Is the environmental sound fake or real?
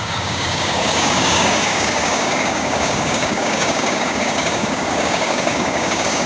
fake